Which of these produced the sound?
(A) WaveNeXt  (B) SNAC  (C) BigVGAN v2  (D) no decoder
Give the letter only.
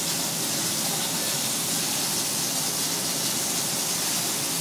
D